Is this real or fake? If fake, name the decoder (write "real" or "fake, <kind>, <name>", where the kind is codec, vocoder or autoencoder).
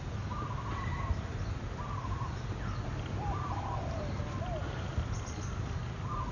real